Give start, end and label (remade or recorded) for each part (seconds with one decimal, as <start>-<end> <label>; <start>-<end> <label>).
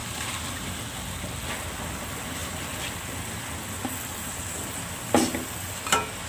0.0-6.3 recorded